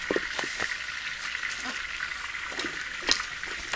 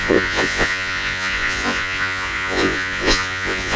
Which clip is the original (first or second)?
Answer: first